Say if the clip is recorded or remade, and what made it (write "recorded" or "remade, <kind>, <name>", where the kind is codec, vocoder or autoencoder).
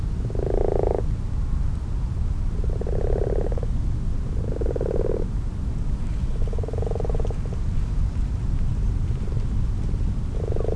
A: recorded